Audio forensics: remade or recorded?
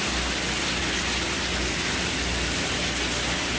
recorded